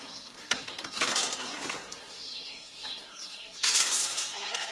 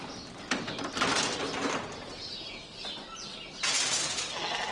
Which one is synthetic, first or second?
first